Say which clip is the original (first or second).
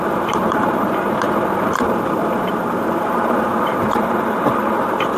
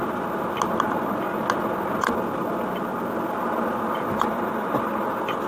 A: second